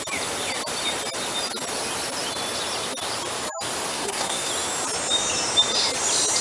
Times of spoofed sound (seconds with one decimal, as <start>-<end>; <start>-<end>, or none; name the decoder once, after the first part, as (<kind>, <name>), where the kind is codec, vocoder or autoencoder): 3.9-4.5 (codec, SNAC)